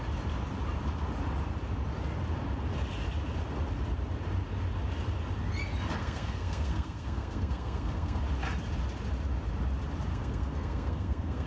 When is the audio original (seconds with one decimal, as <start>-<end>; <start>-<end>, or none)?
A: 0.0-6.0; 8.2-10.1